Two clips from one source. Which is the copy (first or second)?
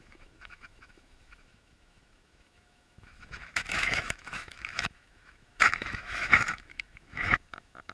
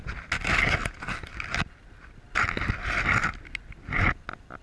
first